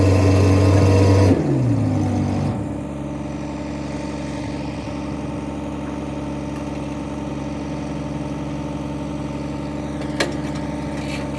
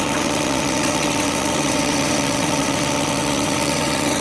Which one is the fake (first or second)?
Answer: second